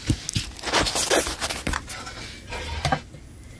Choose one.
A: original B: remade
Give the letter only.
A